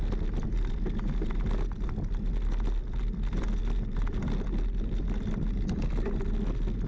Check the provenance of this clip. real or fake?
real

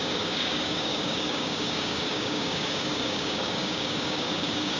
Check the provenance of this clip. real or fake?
fake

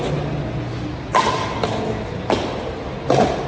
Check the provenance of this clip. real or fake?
real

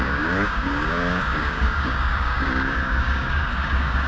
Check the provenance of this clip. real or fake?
fake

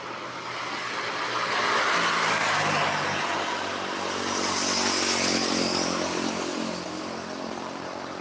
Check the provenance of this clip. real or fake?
real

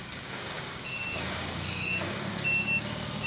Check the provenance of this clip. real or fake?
fake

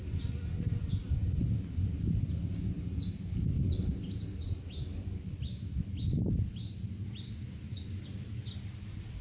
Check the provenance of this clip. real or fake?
real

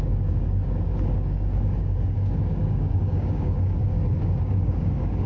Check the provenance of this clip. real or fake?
fake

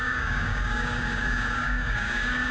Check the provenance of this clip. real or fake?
fake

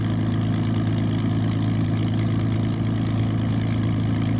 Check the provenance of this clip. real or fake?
real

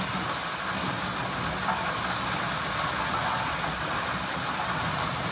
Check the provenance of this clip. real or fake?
real